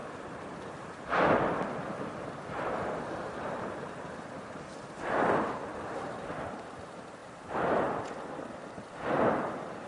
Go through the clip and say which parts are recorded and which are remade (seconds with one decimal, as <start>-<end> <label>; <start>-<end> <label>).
0.0-9.9 recorded